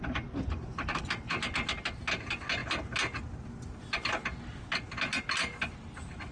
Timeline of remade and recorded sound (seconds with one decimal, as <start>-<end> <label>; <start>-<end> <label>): 0.0-6.3 recorded

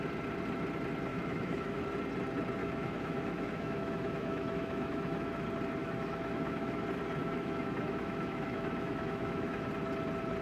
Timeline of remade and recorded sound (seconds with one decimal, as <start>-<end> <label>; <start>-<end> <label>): 0.0-1.1 recorded; 1.1-1.8 remade; 1.8-2.6 recorded; 2.6-5.3 remade; 5.3-5.8 recorded; 5.8-6.8 remade; 6.8-7.2 recorded; 7.2-9.7 remade; 9.7-10.4 recorded

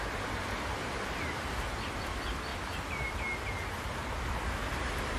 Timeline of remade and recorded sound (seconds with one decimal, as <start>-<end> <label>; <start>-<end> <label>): 0.0-5.2 recorded

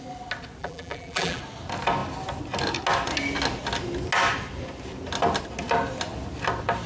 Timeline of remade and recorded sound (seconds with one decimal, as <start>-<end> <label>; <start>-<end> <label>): 0.0-0.6 recorded; 0.6-1.4 remade; 1.4-6.9 recorded

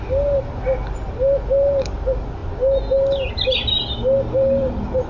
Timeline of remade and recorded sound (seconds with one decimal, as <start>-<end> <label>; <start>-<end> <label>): 0.0-5.1 recorded